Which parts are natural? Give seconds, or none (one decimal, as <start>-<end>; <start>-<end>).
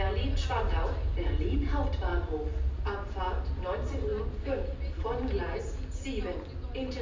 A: 0.0-2.1; 3.5-7.0